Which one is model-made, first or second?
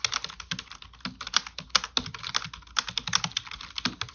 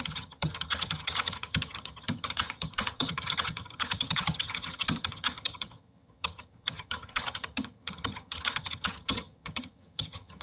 second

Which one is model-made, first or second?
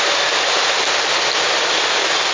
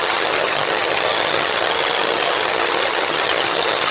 second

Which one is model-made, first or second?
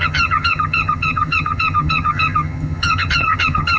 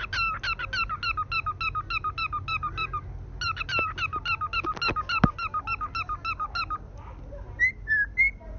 first